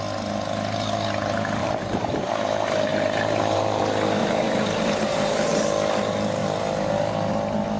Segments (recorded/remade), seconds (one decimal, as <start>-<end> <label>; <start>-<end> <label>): 0.0-1.6 recorded; 1.6-2.3 remade; 2.3-2.9 recorded; 2.9-3.8 remade; 3.8-4.2 recorded; 4.2-5.5 remade; 5.5-7.8 recorded